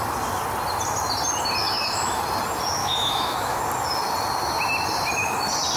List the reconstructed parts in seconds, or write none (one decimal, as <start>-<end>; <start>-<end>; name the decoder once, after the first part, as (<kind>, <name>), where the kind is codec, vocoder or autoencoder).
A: 1.6-2.2 (autoencoder, DAC-VAE); 2.8-3.6